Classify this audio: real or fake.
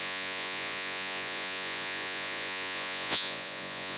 fake